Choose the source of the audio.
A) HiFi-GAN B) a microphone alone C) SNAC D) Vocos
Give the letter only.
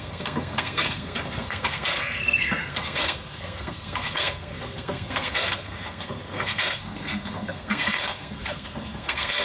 C